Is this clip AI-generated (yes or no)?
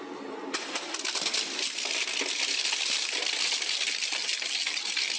no